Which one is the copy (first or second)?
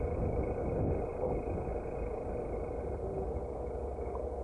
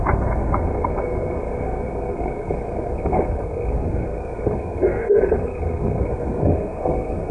second